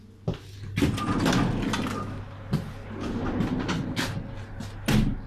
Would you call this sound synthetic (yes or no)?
no